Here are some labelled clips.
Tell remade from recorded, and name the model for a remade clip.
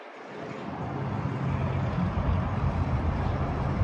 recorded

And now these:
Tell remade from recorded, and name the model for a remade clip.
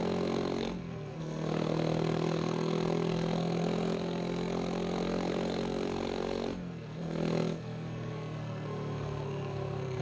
remade, codec, SNAC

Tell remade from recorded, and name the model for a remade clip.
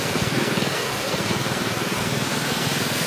remade, codec, SNAC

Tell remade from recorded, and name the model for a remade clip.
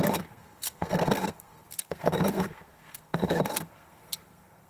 remade, codec, SNAC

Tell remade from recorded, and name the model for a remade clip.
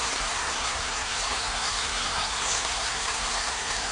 remade, codec, SNAC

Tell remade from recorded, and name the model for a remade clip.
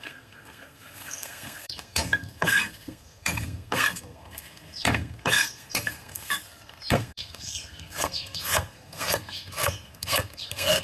remade, codec, SNAC